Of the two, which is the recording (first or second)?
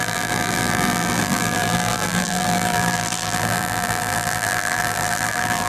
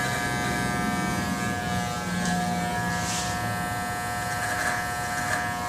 second